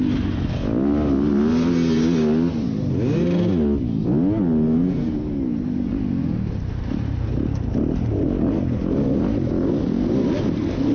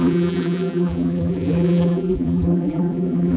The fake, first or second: second